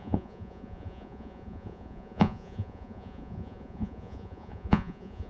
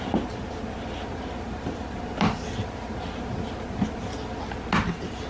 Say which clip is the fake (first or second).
first